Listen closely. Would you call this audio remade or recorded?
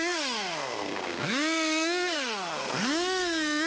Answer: remade